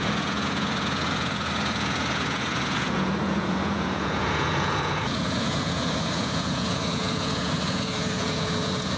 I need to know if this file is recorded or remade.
remade